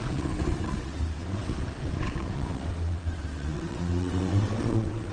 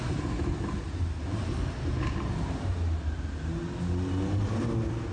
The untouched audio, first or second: second